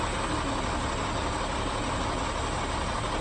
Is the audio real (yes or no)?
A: yes